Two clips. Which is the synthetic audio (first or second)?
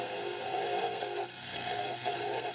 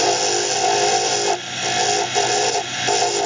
first